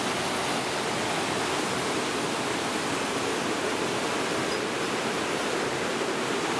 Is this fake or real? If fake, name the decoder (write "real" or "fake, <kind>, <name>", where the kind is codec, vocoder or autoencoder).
real